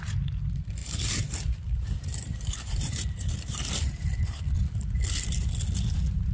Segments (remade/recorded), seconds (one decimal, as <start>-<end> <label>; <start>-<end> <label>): 0.0-0.8 recorded; 0.8-4.4 remade; 4.4-6.3 recorded

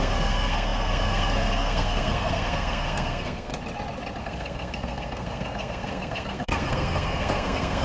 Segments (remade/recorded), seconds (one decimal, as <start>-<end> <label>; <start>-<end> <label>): 0.0-3.5 remade; 3.5-4.2 recorded; 4.2-7.8 remade